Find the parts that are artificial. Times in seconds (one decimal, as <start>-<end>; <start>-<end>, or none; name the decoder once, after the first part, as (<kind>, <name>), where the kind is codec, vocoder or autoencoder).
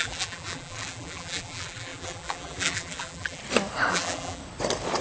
0.0-3.4 (vocoder, BigVGAN v2); 3.9-4.4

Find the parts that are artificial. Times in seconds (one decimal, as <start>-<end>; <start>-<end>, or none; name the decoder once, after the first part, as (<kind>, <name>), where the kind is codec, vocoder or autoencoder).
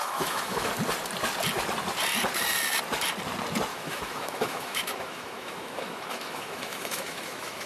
0.0-0.7 (autoencoder, DAC-VAE); 3.7-7.7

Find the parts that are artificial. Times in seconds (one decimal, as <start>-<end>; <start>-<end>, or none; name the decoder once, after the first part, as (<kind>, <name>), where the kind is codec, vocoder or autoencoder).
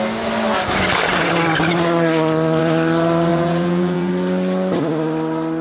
3.3-4.1 (vocoder, Vocos)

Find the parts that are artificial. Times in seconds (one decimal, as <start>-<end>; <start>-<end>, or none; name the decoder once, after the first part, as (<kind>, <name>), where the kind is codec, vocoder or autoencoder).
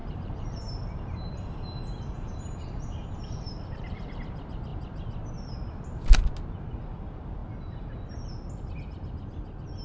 0.0-4.2 (vocoder, BigVGAN v2)